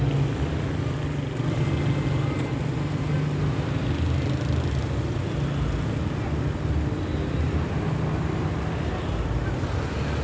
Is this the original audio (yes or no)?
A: yes